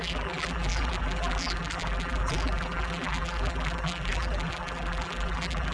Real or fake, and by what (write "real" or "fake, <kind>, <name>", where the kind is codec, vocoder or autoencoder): fake, vocoder, BigVGAN v2